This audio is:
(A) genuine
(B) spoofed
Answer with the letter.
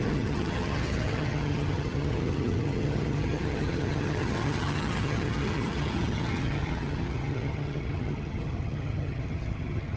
B